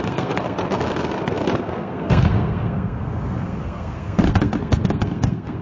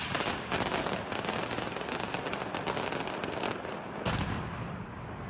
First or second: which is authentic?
second